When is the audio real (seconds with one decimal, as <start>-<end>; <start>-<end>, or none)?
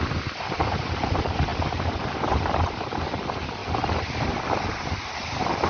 0.0-5.7